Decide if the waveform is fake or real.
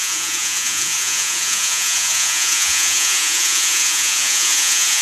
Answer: fake